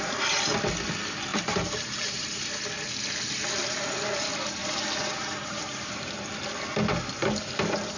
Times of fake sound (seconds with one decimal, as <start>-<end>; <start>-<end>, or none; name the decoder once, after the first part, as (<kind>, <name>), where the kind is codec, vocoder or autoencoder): 1.3-2.4 (vocoder, BigVGAN v2); 4.6-6.4

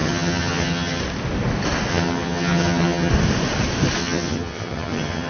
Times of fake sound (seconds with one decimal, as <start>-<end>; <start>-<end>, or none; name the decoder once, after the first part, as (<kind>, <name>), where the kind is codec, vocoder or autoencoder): 0.0-1.0 (vocoder, HiFi-GAN); 1.9-3.1; 4.0-5.3

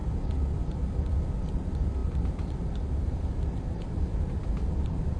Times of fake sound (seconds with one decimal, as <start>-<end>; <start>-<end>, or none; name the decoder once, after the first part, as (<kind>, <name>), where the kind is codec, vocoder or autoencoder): 2.0-5.2 (vocoder, BigVGAN v2)